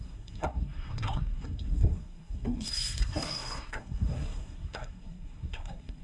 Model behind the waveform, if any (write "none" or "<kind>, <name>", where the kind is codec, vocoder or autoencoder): codec, SNAC